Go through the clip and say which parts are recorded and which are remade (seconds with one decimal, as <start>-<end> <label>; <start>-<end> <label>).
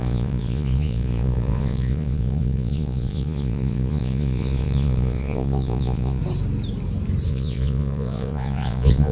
0.0-6.2 remade; 6.2-7.3 recorded; 7.3-9.1 remade